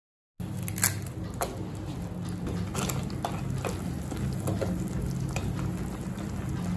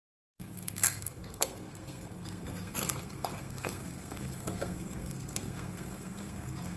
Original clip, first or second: first